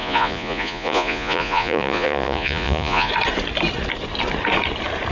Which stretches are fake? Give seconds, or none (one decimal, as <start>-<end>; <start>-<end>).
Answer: 0.0-3.1